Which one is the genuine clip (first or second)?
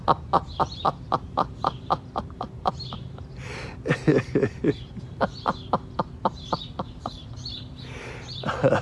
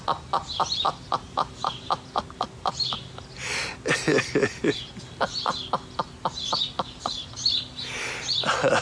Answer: second